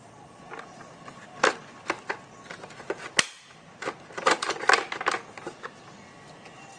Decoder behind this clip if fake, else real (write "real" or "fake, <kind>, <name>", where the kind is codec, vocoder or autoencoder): real